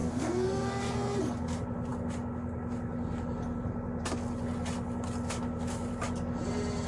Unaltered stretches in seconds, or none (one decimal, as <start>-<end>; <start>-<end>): 1.2-6.9